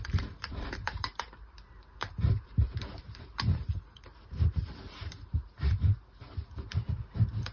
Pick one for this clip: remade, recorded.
remade